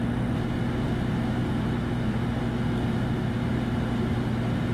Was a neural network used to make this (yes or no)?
no